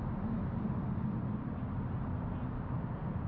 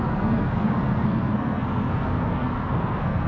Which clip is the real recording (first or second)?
first